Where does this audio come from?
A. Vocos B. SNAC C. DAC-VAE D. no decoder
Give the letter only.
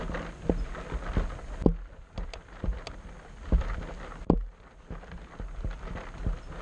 D